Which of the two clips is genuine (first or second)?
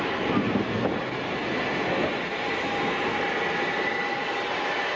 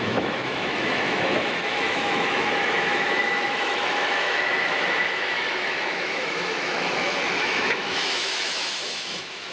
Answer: first